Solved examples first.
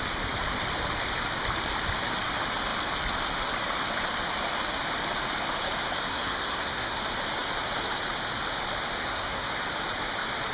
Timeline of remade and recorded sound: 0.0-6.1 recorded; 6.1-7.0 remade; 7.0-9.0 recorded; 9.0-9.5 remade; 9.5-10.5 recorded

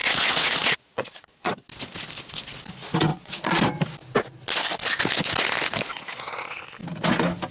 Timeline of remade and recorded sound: 0.0-1.5 remade; 1.5-3.1 recorded; 3.1-3.6 remade; 3.6-5.9 recorded; 5.9-6.6 remade; 6.6-7.5 recorded

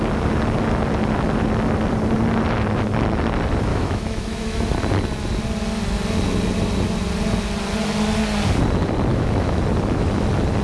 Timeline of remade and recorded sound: 0.0-3.7 recorded; 3.7-4.6 remade; 4.6-9.1 recorded; 9.1-9.6 remade; 9.6-10.6 recorded

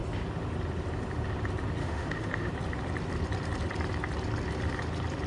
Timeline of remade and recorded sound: 0.0-1.8 recorded; 1.8-2.5 remade; 2.5-5.3 recorded

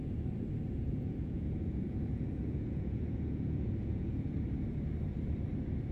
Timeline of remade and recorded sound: 0.0-0.8 recorded; 0.8-4.3 remade; 4.3-5.9 recorded

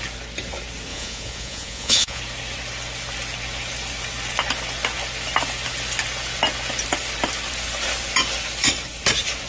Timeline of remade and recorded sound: 0.0-0.9 recorded; 0.9-2.2 remade; 2.2-9.5 recorded

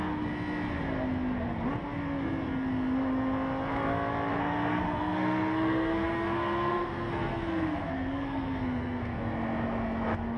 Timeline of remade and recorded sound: 0.0-4.3 recorded; 4.3-9.2 remade; 9.2-10.4 recorded